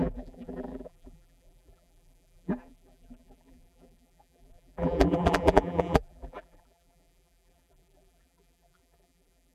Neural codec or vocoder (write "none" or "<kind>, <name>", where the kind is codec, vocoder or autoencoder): vocoder, BigVGAN v2